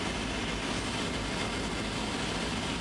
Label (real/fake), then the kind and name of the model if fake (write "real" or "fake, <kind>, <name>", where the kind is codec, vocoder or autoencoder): real